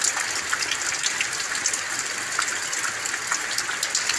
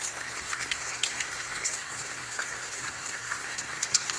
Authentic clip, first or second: first